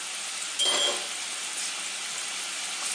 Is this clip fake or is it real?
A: real